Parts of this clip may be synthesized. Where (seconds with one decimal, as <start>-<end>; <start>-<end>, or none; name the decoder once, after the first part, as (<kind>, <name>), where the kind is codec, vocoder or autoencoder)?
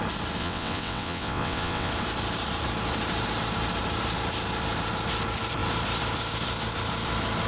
0.4-1.9 (vocoder, WaveNeXt)